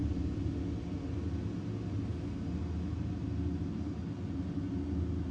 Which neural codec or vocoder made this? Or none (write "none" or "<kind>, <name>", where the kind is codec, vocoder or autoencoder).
none